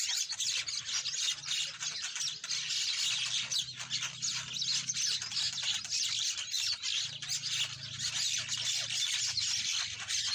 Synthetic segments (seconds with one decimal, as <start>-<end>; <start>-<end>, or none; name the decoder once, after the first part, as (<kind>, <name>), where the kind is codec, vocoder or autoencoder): none